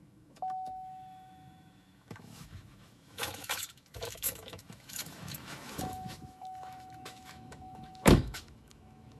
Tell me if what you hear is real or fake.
fake